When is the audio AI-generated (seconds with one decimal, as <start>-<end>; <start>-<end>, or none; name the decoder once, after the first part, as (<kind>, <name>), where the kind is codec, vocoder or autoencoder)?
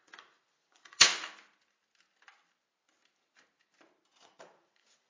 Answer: 0.0-1.1 (vocoder, Vocos); 4.2-5.1